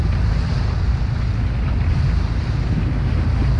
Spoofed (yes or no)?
no